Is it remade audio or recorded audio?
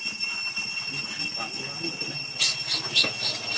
recorded